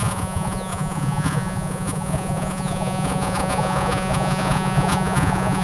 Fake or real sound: fake